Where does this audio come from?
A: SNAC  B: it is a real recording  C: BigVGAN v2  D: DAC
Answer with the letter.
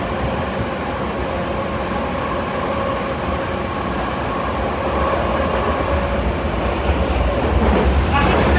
B